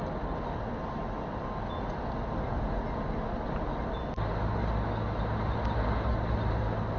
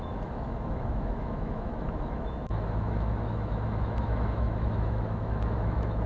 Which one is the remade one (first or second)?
second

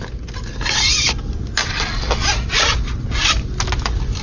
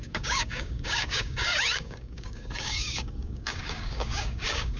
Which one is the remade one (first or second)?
second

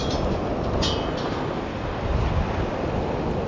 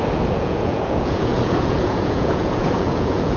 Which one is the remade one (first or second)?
second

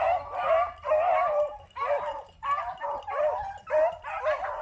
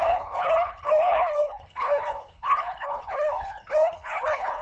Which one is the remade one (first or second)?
second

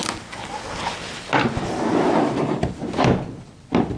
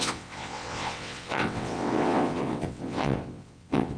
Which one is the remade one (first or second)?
second